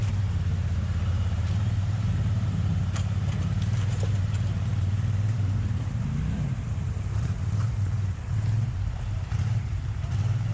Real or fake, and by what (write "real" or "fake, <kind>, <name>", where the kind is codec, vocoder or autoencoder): fake, vocoder, BigVGAN v2